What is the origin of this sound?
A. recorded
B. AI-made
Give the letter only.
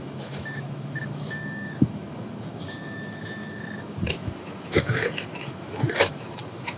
B